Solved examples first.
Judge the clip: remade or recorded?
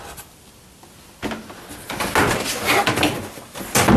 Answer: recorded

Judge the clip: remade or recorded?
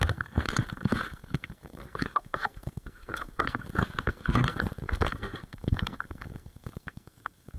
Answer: remade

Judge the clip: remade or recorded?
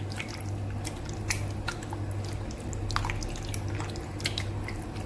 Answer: recorded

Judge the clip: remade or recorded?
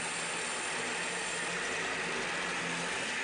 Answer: recorded